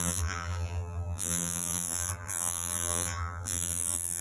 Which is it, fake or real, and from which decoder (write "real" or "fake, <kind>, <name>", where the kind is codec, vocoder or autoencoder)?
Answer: fake, vocoder, BigVGAN v2